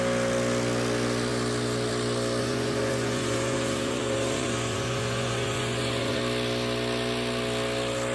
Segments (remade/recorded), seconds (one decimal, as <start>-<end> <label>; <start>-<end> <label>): 0.0-2.4 recorded; 2.4-6.2 remade; 6.2-8.1 recorded